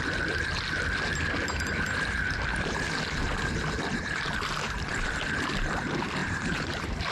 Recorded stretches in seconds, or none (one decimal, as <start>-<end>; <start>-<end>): 0.0-3.9; 4.9-6.2